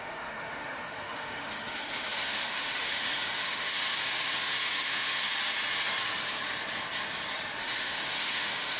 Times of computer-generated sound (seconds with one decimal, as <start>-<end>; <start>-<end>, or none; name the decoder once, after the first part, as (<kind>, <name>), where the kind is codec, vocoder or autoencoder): 0.0-5.3 (autoencoder, DAC-VAE); 7.6-8.8